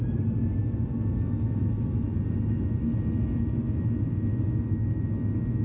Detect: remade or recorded recorded